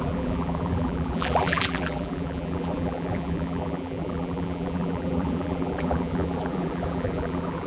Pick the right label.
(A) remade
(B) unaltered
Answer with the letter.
A